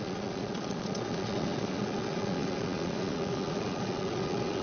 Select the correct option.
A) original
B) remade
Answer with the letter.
B